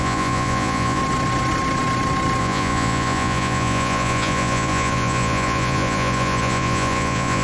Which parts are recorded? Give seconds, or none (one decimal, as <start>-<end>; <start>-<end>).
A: 1.0-2.4